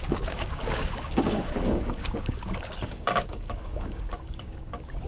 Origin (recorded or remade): remade